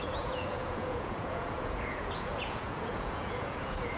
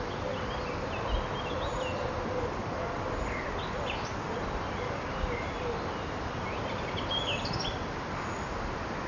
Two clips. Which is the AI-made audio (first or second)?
first